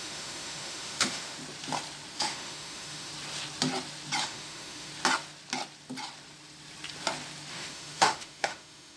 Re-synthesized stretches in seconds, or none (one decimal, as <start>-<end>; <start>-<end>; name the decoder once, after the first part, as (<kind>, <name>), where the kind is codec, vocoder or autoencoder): 0.0-1.4 (autoencoder, DAC-VAE); 2.1-3.1; 4.2-4.9; 7.5-9.0